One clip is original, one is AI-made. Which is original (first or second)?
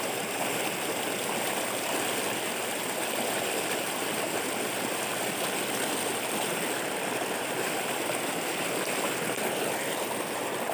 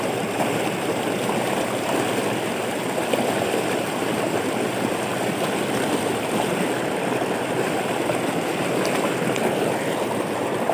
first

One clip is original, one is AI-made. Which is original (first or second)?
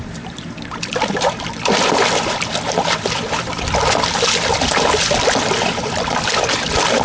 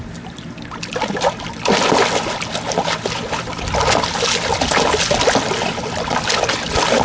second